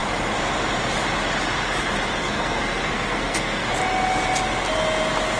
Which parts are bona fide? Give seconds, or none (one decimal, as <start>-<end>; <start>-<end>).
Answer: 0.0-2.2; 3.7-5.4